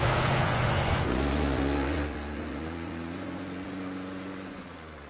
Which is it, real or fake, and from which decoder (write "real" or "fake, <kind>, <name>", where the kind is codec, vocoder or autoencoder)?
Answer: fake, vocoder, Vocos